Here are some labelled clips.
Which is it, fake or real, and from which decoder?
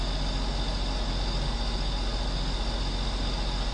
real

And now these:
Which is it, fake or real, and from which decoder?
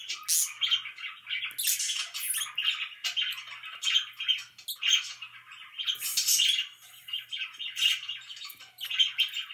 real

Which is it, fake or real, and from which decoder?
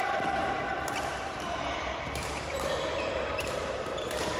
fake, vocoder, BigVGAN v2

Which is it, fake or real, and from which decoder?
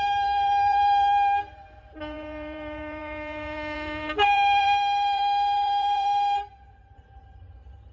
fake, vocoder, BigVGAN v2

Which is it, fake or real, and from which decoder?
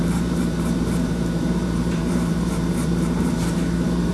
fake, vocoder, BigVGAN v2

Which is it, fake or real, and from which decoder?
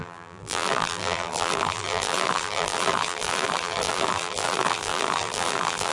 fake, vocoder, BigVGAN v2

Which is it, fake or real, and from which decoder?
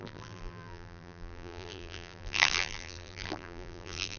fake, vocoder, BigVGAN v2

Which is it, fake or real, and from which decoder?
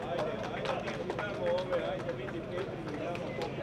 real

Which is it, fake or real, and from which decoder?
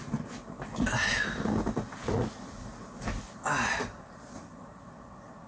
real